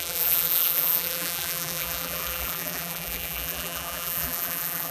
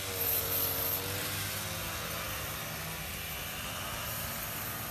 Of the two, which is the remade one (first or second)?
first